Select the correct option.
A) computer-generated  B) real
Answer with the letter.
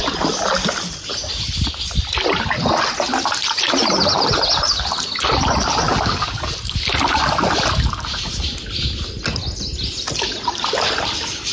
B